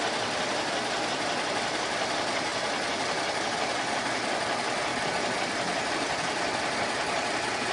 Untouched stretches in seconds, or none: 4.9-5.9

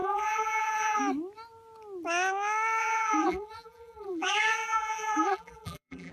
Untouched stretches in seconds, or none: 1.0-2.8